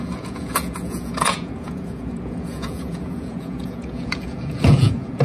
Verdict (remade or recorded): remade